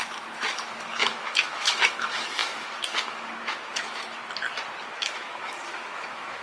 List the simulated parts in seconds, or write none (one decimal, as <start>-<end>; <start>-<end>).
0.0-4.2; 4.9-6.4

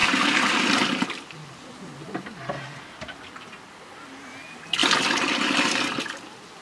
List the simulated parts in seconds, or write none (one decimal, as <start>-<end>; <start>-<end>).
none